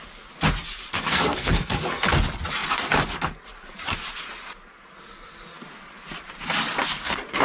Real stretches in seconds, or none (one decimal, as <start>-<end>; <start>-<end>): 0.0-0.9; 2.1-7.4